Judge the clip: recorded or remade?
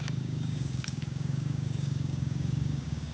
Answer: remade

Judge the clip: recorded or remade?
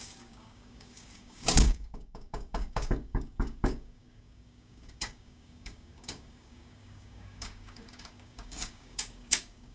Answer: remade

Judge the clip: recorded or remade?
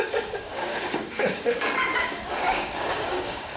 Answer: remade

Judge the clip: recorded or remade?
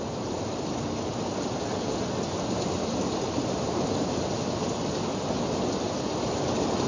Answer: recorded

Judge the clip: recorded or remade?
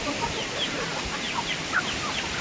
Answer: recorded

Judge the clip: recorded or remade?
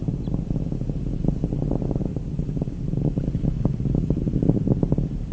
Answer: recorded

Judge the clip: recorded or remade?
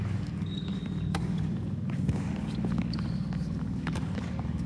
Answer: remade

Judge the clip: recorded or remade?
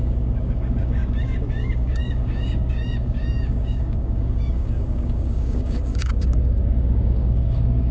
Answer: remade